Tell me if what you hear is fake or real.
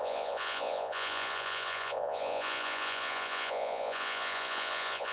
fake